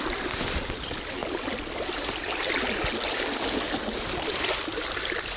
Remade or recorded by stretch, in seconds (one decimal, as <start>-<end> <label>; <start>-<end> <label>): 0.0-5.4 recorded

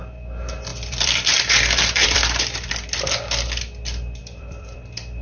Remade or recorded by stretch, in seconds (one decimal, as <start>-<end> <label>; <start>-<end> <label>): 0.0-0.7 recorded; 0.7-2.7 remade; 2.7-4.2 recorded; 4.2-5.2 remade

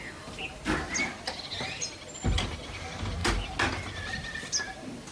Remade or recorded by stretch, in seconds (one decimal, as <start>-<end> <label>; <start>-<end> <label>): 0.0-5.1 recorded